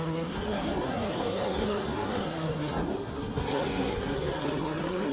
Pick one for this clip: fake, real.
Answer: fake